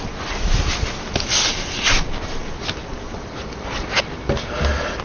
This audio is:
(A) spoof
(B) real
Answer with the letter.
B